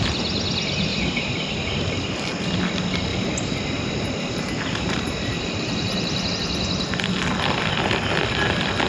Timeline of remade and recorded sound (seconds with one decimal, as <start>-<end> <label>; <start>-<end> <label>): 0.0-0.9 recorded; 0.9-1.5 remade; 1.5-3.1 recorded; 3.1-6.3 remade; 6.3-8.9 recorded

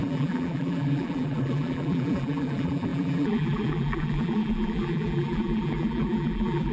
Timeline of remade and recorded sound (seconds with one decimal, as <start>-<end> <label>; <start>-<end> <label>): 0.0-6.7 remade